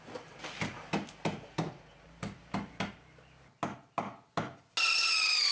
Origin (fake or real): real